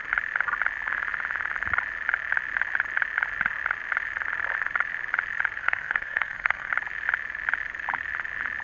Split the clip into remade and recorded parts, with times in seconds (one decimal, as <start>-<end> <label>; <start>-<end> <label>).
0.0-5.6 recorded; 5.6-6.7 remade; 6.7-8.6 recorded